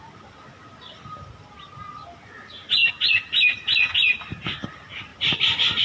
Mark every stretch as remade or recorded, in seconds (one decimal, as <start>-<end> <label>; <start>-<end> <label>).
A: 0.0-5.8 recorded